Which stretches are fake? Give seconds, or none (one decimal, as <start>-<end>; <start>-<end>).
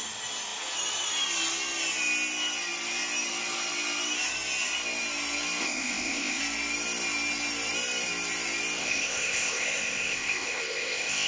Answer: 5.6-6.4; 8.8-11.3